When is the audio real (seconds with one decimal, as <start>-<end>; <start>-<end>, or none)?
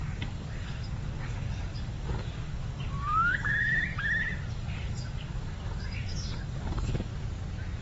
3.9-4.5; 7.1-7.8